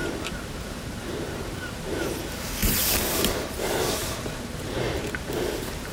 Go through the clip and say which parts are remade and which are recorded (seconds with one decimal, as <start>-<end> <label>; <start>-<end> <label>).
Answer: 0.0-2.6 remade; 2.6-3.5 recorded; 3.5-4.0 remade; 4.0-4.6 recorded; 4.6-5.9 remade